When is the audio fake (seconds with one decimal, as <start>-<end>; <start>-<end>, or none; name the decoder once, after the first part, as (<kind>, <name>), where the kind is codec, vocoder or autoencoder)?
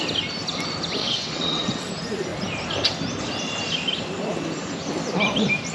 1.0-1.9 (vocoder, WaveNeXt)